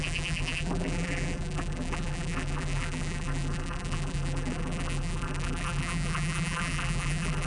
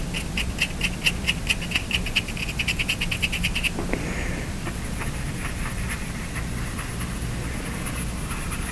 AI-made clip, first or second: first